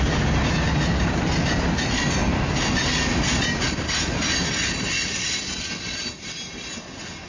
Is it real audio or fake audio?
real